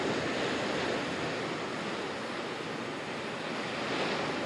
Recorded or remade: recorded